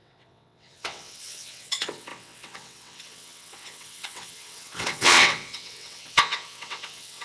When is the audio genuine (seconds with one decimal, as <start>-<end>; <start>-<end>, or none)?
none